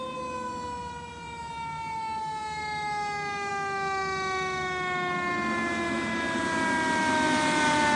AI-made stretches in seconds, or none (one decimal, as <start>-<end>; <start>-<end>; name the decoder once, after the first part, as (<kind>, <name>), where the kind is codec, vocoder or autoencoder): none